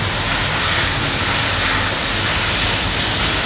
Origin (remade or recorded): recorded